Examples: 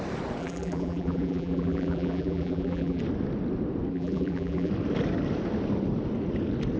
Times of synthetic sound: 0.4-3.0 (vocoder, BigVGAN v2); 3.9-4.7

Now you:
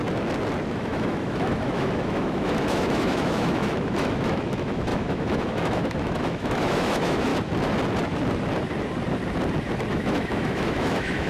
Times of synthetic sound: 0.7-7.3 (autoencoder, DAC-VAE); 9.9-11.3